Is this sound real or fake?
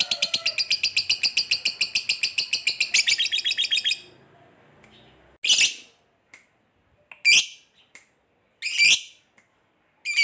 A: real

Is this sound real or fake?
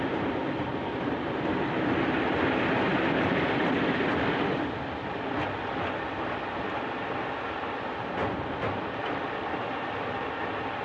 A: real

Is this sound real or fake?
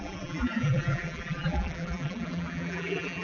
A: fake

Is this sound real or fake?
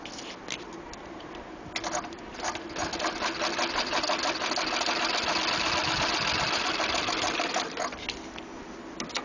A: real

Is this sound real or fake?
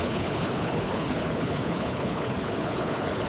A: fake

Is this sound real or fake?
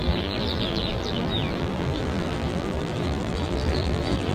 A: fake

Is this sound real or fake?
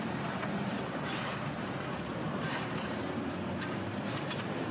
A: fake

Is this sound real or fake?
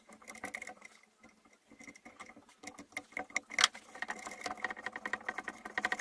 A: real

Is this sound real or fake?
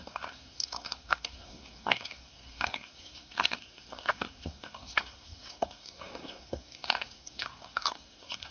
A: fake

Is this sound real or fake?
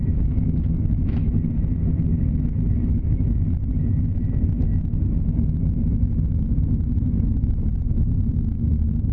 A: fake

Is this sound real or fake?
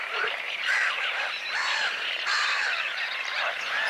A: fake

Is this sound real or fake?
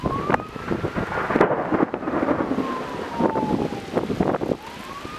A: real